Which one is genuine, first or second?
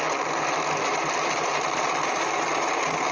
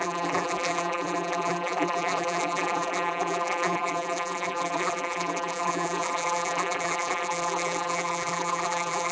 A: first